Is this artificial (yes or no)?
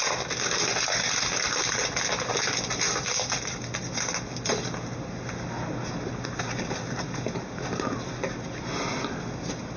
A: no